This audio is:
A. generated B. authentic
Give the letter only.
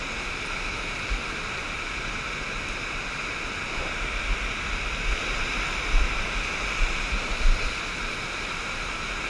B